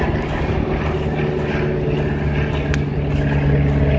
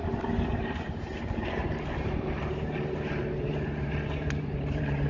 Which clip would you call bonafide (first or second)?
first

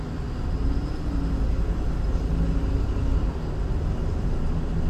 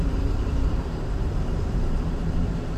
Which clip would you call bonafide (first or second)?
first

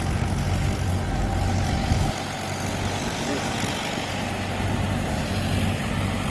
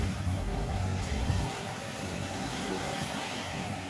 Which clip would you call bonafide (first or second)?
first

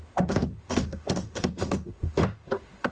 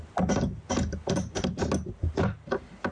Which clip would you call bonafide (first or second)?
second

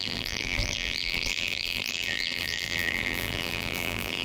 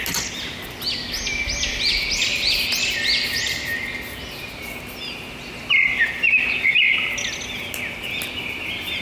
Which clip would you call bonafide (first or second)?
second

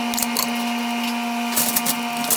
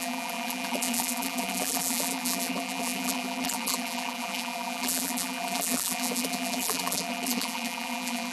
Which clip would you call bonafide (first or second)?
first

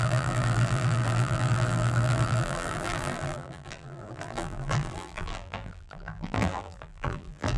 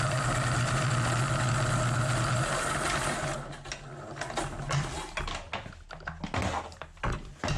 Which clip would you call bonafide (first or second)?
second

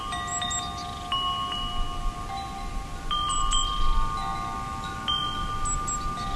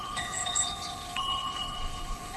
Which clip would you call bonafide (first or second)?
first